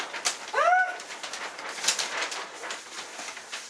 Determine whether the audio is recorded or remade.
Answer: recorded